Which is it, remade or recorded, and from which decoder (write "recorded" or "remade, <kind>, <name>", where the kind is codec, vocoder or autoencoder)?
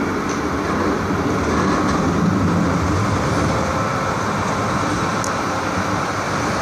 recorded